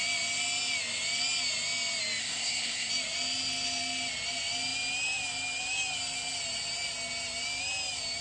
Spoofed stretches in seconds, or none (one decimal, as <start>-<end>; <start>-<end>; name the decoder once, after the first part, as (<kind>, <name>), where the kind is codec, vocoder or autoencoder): 2.2-2.9 (codec, SNAC)